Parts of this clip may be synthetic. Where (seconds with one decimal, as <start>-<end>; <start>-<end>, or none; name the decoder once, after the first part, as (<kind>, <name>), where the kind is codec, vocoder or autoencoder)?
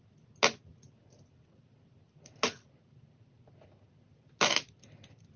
none